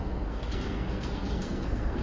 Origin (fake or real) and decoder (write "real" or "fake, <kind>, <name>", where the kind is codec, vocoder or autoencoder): fake, codec, SNAC